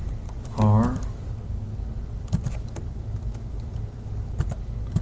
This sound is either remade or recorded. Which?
recorded